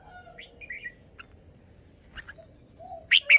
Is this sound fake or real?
real